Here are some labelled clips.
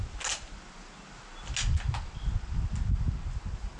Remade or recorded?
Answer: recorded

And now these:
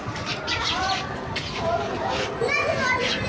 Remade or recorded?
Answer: recorded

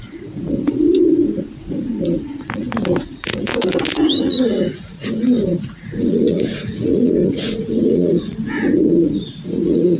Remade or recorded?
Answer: remade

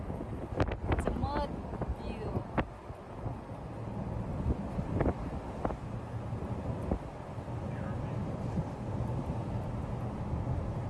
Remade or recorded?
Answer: recorded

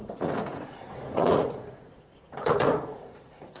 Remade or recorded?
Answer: remade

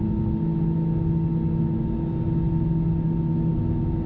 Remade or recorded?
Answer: recorded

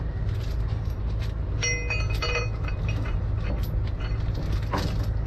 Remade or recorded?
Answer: recorded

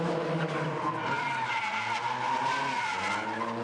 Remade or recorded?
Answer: recorded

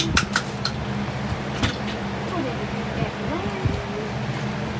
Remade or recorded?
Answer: recorded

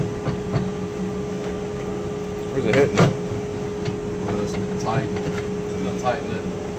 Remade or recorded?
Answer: recorded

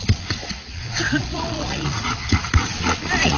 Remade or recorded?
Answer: remade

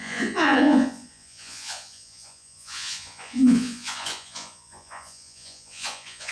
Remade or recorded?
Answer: remade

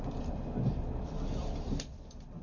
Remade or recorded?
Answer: recorded